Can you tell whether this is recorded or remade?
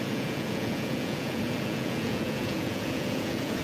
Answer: remade